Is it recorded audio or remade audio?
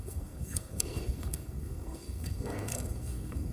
remade